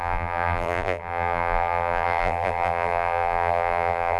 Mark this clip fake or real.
fake